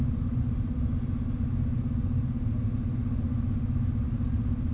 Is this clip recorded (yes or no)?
yes